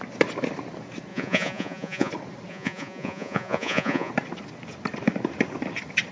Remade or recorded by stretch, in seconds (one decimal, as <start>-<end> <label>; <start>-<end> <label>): 0.0-1.1 recorded; 1.1-2.1 remade; 2.1-2.5 recorded; 2.5-4.1 remade; 4.1-6.1 recorded